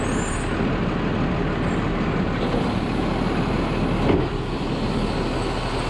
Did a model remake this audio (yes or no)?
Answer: no